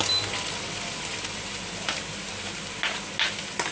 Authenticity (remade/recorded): recorded